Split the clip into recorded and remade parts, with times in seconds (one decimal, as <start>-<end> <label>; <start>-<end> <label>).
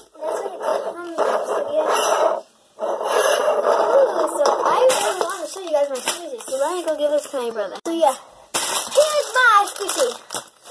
0.0-10.7 remade